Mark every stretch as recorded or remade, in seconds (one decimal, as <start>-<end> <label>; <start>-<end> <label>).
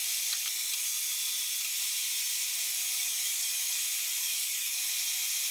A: 0.0-3.0 recorded; 3.0-3.8 remade; 3.8-4.2 recorded; 4.2-4.9 remade; 4.9-5.5 recorded